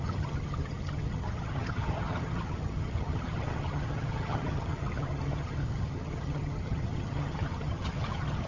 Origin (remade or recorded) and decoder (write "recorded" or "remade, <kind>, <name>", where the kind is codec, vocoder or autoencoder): remade, vocoder, HiFi-GAN